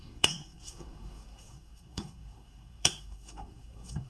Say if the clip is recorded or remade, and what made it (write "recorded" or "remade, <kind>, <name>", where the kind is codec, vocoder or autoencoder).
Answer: remade, codec, SNAC